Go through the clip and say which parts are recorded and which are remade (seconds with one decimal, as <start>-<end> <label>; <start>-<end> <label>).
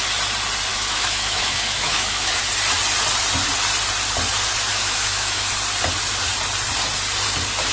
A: 0.0-0.7 recorded; 0.7-2.4 remade; 2.4-4.7 recorded; 4.7-5.5 remade; 5.5-7.7 recorded